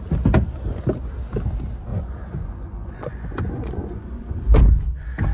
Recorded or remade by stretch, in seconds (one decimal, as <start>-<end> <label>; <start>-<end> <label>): 0.0-1.9 recorded; 1.9-4.6 remade; 4.6-5.3 recorded